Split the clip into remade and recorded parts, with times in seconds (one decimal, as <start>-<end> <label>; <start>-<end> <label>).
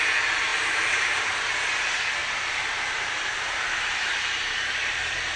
0.0-2.2 recorded; 2.2-5.0 remade; 5.0-5.4 recorded